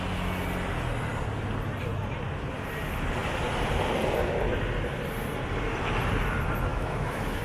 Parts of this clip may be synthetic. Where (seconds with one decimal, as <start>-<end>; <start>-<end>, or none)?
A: 6.7-7.4